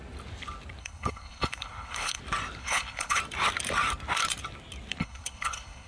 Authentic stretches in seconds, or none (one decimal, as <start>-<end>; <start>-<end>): 0.0-0.8; 2.2-2.6; 3.2-5.0